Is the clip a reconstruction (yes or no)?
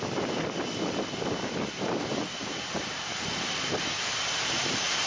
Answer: no